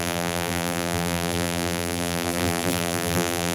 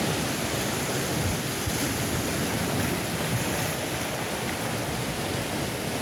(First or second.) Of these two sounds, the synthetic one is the first